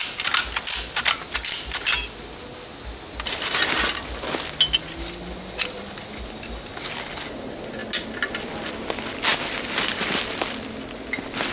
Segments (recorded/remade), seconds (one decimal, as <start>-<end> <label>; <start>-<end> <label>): 0.0-11.5 recorded